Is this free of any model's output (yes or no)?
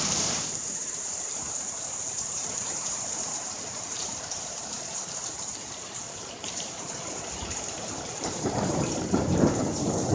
no